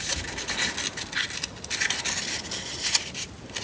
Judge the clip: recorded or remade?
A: recorded